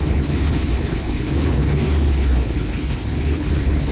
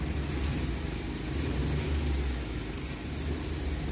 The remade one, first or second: first